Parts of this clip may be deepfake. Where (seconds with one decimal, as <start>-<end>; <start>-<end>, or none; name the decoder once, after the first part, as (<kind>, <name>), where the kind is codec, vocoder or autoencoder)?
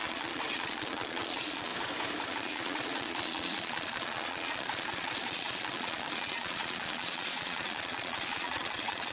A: 0.0-1.7 (vocoder, Vocos); 2.3-9.1